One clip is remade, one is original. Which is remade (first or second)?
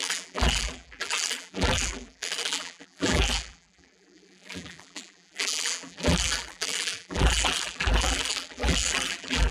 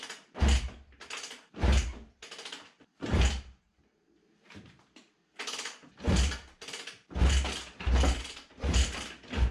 first